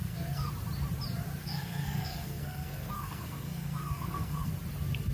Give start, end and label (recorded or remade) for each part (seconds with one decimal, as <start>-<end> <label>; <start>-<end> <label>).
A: 0.0-0.5 remade; 0.5-1.4 recorded; 1.4-4.5 remade; 4.5-5.1 recorded